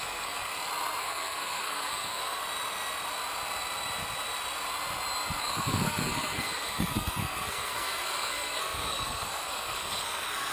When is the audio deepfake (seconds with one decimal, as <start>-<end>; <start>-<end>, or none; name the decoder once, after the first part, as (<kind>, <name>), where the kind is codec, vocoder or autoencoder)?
0.0-0.5 (codec, SNAC); 1.0-2.4; 5.4-10.5